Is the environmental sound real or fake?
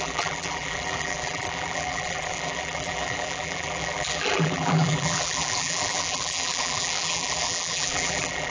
fake